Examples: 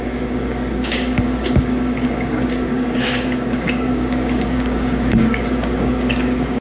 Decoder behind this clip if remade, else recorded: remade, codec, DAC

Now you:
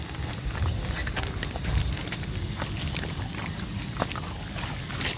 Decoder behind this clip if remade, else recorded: recorded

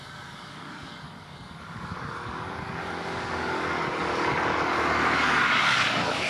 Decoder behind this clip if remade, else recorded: remade, codec, DAC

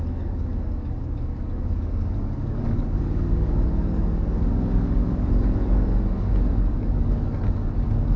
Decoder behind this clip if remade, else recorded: remade, codec, DAC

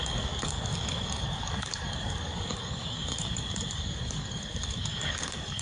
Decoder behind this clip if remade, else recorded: remade, codec, DAC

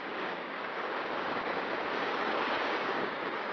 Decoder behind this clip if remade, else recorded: remade, codec, DAC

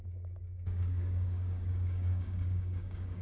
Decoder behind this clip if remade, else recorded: remade, codec, DAC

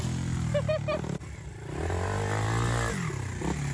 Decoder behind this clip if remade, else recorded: recorded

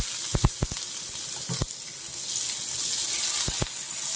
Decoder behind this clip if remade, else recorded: recorded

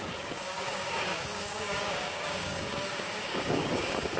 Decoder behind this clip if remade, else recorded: remade, codec, DAC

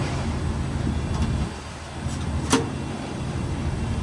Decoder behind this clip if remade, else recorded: recorded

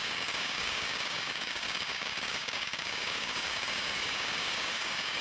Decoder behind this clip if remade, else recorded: remade, codec, DAC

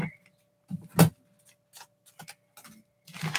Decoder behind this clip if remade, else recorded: recorded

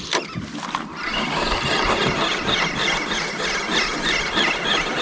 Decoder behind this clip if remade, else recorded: recorded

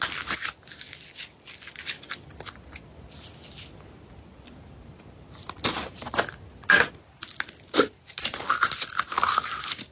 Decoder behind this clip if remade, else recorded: recorded